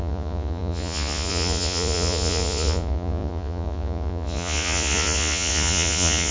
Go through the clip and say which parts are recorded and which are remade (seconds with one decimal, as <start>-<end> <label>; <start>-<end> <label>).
0.0-6.3 remade